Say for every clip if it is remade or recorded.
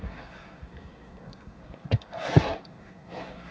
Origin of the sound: remade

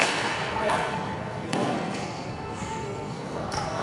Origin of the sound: remade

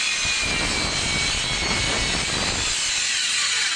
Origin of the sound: recorded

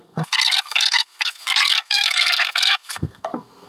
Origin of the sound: remade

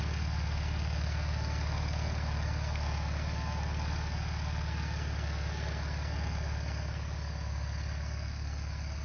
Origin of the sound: remade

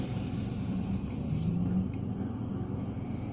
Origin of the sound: recorded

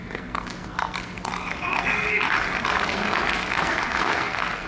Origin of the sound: remade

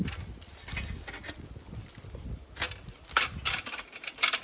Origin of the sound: recorded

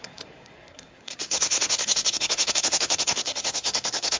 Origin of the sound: remade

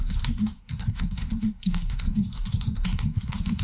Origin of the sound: remade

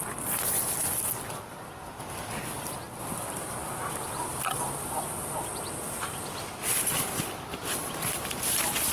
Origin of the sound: recorded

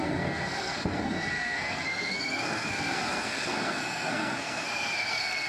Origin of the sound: remade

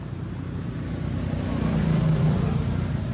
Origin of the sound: recorded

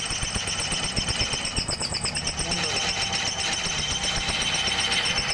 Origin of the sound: recorded